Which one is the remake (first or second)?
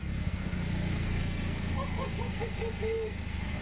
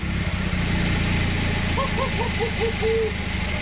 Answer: first